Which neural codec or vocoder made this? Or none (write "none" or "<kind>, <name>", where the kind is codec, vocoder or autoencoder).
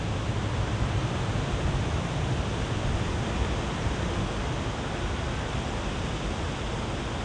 none